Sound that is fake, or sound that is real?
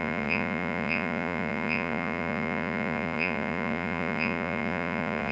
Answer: fake